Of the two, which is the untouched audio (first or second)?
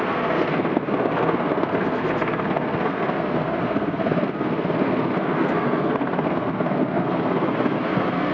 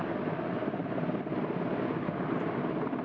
second